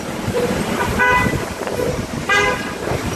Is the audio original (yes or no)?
no